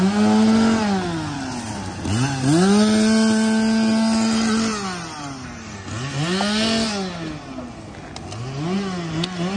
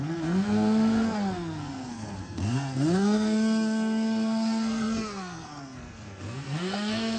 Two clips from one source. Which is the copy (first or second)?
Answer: second